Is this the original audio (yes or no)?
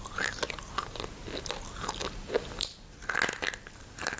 yes